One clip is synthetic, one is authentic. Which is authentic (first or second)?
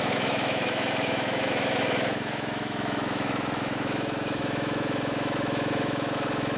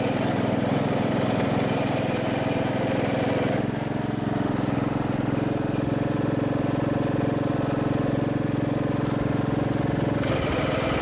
second